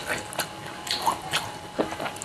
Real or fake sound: real